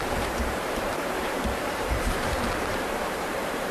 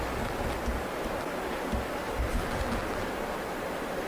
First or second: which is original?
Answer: second